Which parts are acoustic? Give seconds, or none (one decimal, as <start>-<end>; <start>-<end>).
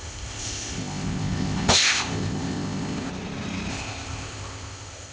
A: 3.1-3.7